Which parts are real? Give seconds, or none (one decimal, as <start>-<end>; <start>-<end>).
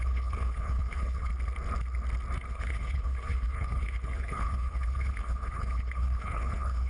1.3-2.5